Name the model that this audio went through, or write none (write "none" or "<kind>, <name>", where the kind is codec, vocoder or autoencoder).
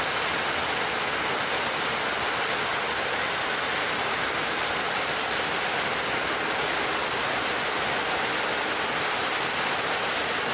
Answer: none